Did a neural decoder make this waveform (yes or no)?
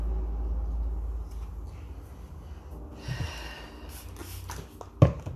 no